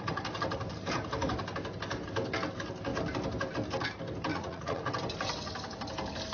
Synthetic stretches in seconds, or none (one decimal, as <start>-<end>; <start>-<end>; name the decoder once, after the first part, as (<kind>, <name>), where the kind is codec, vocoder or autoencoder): 4.3-4.9 (vocoder, Vocos)